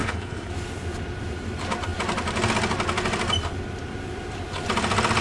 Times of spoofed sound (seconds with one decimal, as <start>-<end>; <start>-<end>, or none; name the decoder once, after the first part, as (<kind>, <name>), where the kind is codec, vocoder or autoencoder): 0.0-0.5 (codec, HILCodec)